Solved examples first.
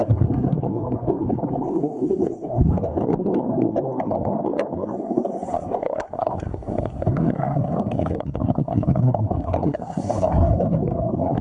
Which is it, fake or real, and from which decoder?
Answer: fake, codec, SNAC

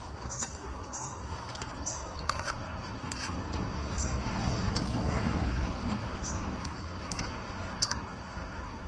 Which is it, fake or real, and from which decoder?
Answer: fake, codec, SNAC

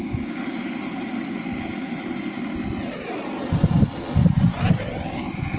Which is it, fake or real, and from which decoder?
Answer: real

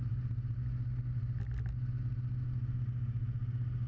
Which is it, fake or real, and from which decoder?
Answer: real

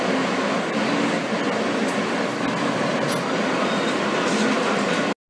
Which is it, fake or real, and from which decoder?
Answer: real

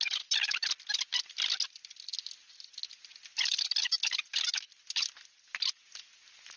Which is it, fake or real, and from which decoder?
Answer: real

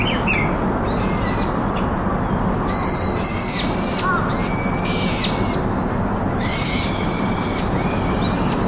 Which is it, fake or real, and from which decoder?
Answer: real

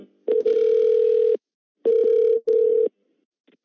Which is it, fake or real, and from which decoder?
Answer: real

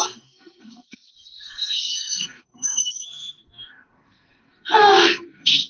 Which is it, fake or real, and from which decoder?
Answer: fake, codec, SNAC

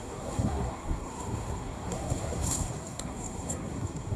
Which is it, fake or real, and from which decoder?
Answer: fake, codec, SNAC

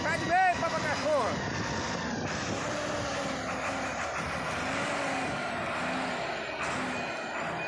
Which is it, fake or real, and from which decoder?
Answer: real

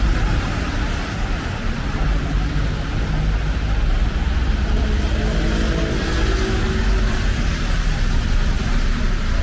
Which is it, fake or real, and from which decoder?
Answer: real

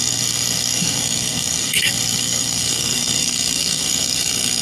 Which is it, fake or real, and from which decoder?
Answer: fake, codec, SNAC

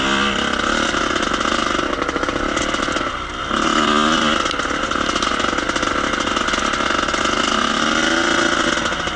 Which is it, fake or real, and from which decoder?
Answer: real